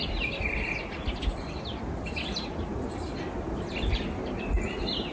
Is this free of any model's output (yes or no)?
yes